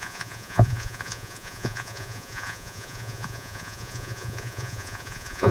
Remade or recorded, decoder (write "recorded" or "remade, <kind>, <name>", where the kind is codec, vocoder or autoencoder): remade, vocoder, Vocos